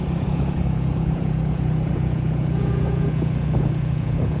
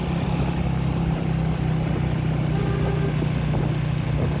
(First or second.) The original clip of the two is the second